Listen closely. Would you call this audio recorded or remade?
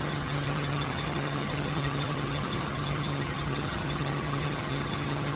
remade